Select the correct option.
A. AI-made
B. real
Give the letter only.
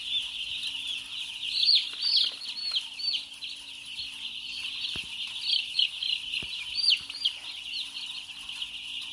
B